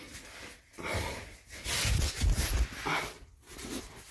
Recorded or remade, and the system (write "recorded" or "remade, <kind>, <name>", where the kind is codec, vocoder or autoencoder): recorded